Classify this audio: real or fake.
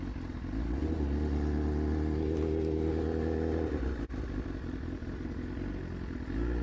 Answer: real